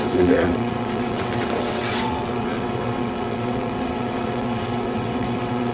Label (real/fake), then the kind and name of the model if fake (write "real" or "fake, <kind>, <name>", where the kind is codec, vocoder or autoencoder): fake, vocoder, WaveNeXt